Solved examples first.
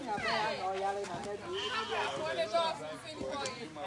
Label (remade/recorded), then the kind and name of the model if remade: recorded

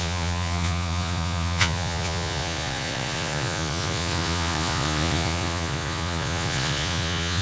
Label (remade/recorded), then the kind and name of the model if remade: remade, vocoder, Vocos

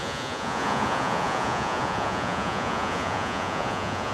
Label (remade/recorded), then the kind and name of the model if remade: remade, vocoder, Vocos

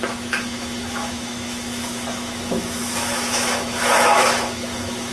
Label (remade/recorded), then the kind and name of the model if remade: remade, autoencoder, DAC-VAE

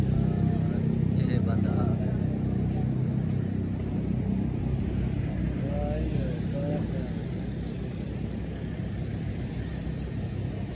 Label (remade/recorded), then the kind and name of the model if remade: recorded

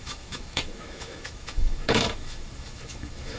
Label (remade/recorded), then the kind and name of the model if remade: remade, autoencoder, DAC-VAE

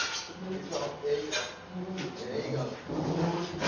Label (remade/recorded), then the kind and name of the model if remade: recorded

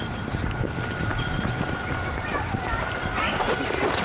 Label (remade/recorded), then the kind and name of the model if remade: remade, vocoder, BigVGAN v2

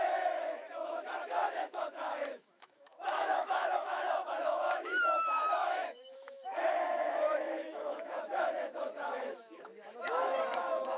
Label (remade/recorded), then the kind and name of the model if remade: remade, autoencoder, DAC-VAE